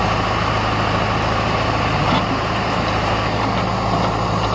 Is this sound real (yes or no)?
yes